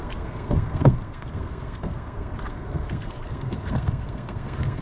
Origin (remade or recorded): remade